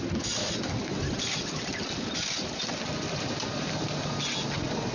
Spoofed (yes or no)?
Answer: no